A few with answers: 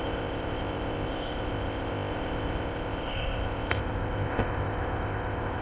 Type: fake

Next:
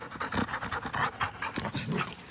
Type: real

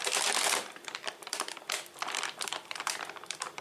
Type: fake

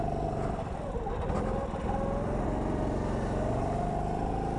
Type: real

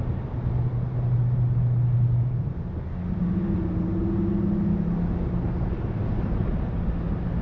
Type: real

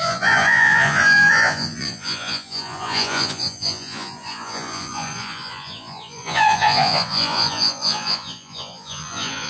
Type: fake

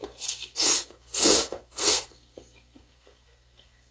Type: fake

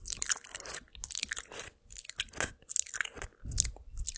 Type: real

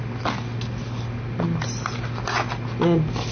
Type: real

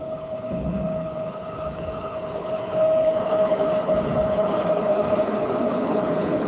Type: fake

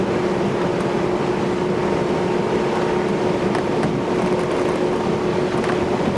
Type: real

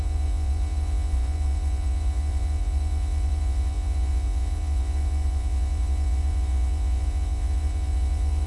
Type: fake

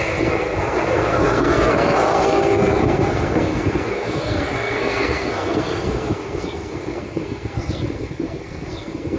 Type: fake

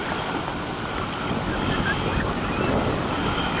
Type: real